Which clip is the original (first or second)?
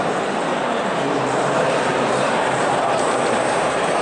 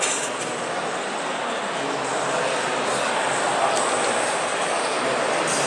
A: second